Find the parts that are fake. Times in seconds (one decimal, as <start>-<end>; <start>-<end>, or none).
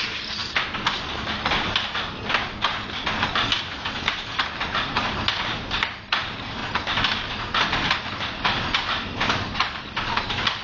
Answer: 0.0-0.4; 3.9-6.6; 8.1-10.6